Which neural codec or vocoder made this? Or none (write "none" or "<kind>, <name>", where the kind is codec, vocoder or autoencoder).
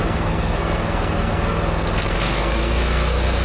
codec, SNAC